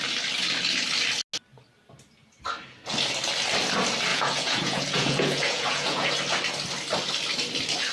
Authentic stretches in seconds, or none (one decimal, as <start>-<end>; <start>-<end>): 0.0-4.1; 6.1-7.9